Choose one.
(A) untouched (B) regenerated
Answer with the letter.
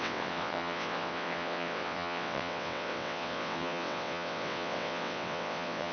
B